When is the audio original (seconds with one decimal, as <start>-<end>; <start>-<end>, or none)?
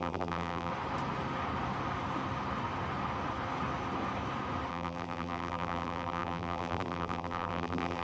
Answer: 0.7-4.7